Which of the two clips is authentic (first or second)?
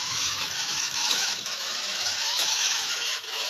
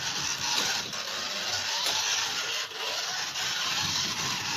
second